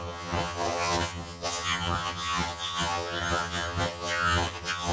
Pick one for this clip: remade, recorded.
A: remade